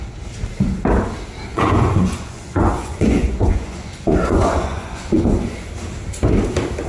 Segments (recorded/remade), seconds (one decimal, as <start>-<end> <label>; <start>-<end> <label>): 0.0-1.5 recorded; 1.5-5.6 remade; 5.6-6.9 recorded